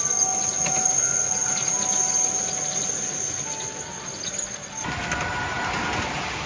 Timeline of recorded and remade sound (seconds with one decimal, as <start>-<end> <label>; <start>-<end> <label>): 0.0-6.5 recorded